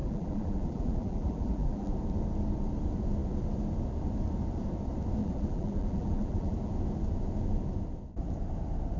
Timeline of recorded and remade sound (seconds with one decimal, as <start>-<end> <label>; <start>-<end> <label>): 0.0-1.9 remade; 1.9-5.2 recorded; 5.2-6.7 remade; 6.7-9.0 recorded